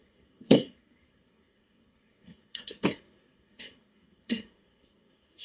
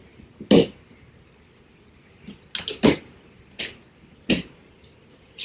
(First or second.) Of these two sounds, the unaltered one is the second